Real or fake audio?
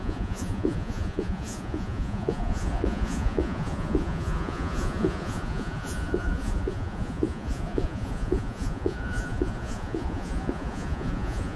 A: fake